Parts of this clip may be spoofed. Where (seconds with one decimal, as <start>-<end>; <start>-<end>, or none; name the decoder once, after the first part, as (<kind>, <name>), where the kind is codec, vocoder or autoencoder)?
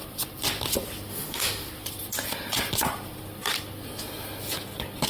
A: 1.1-1.7 (autoencoder, DAC-VAE)